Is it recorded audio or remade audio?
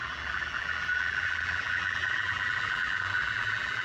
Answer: remade